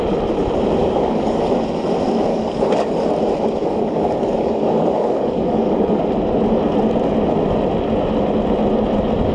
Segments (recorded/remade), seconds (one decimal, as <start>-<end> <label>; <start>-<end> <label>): 0.0-0.8 recorded; 0.8-1.5 remade; 1.5-2.3 recorded; 2.3-3.1 remade; 3.1-3.6 recorded; 3.6-6.0 remade; 6.0-9.3 recorded